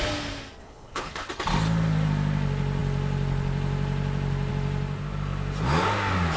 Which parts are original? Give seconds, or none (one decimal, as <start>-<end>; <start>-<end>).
0.0-0.6; 1.3-6.4